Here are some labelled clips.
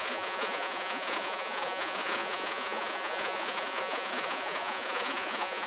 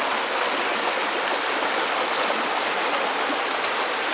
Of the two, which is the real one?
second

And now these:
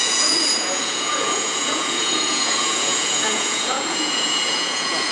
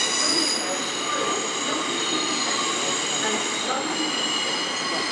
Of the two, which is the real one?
second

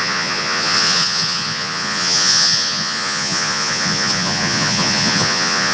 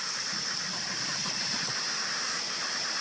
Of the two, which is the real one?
second